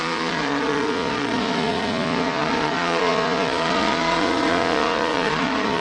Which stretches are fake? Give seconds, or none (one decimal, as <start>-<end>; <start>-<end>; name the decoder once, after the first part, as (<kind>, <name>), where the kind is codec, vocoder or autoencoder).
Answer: 0.0-5.8 (vocoder, Vocos)

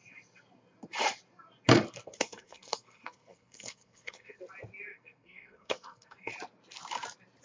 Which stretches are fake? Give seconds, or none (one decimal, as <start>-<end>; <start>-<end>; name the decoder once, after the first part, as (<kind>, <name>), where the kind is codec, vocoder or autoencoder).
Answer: 2.0-4.4 (codec, SNAC); 4.9-6.3

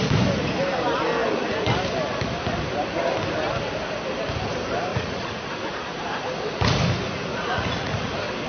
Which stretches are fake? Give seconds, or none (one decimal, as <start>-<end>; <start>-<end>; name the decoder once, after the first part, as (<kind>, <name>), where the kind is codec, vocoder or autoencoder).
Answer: 4.9-6.0 (vocoder, Vocos); 7.3-8.1

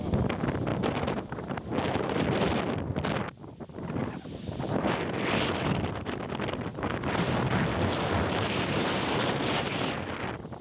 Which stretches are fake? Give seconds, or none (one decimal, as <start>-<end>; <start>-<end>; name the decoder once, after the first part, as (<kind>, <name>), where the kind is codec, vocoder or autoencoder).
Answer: 0.7-2.4 (vocoder, BigVGAN v2); 4.0-4.6; 6.7-9.1